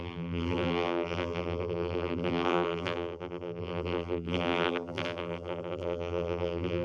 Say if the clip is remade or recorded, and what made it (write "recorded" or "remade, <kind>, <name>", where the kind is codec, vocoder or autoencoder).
remade, vocoder, BigVGAN v2